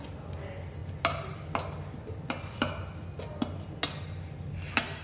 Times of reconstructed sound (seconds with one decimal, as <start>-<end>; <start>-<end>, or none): none